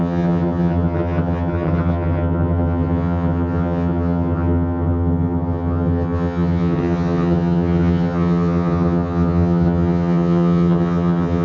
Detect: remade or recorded remade